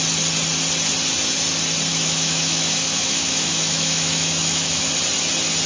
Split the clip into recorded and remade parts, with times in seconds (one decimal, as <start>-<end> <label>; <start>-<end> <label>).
0.0-1.9 recorded; 1.9-4.9 remade; 4.9-5.7 recorded